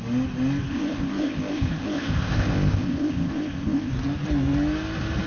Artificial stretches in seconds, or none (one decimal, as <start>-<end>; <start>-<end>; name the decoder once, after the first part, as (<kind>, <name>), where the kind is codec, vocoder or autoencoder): 0.7-3.9 (codec, ZipCodec)